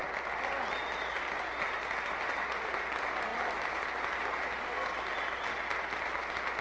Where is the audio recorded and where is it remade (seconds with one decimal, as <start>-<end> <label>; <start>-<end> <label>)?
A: 0.0-6.6 recorded